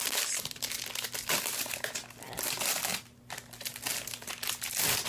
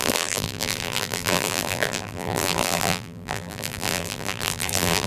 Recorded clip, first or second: first